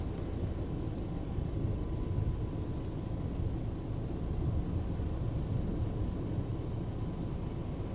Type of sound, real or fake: real